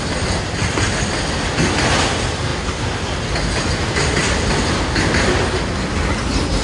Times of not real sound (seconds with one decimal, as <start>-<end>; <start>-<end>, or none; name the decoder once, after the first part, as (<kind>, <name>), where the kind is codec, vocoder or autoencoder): none